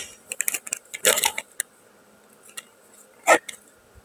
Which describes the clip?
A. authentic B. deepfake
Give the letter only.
A